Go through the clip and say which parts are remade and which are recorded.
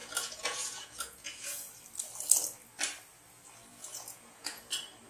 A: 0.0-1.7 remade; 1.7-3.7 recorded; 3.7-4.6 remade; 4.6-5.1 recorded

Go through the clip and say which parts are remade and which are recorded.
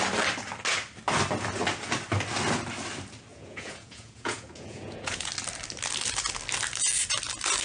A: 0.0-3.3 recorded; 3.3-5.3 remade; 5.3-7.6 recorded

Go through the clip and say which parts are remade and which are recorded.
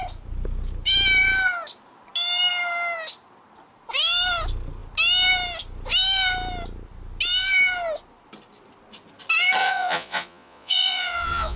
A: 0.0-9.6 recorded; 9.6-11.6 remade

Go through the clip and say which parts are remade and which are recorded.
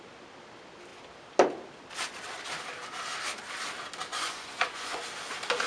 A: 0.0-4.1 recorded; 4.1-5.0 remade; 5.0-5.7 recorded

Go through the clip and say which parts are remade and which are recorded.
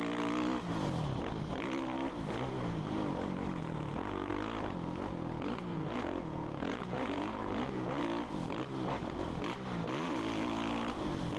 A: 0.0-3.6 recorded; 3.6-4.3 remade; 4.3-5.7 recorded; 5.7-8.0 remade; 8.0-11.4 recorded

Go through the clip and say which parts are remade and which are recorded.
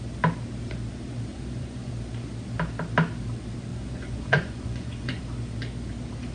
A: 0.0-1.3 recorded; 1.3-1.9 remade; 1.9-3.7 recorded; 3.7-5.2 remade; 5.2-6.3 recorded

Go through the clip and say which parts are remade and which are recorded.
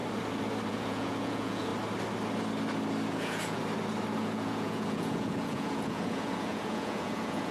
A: 0.0-0.7 recorded; 0.7-1.7 remade; 1.7-3.1 recorded; 3.1-3.6 remade; 3.6-4.1 recorded; 4.1-7.5 remade